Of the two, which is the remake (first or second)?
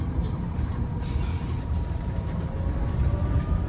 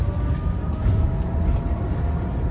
first